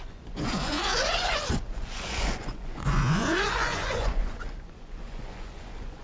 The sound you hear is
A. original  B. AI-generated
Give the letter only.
B